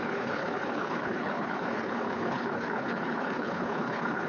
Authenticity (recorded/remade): remade